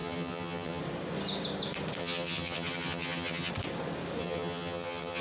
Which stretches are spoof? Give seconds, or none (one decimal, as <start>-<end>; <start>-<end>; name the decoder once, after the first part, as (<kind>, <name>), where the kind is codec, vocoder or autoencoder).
0.0-0.8 (vocoder, HiFi-GAN); 2.0-3.5; 4.2-5.2